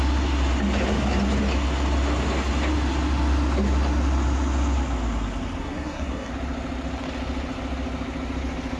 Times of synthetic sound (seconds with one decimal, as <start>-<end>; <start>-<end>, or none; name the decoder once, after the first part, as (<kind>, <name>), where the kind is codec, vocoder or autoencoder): 5.6-6.3 (codec, SNAC)